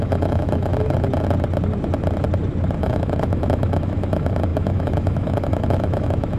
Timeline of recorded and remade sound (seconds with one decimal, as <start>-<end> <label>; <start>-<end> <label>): 0.0-0.7 remade; 0.7-2.8 recorded; 2.8-6.4 remade